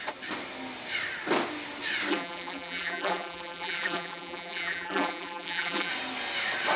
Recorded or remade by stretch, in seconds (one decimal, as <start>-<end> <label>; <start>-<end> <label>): 0.0-2.1 recorded; 2.1-5.9 remade; 5.9-6.8 recorded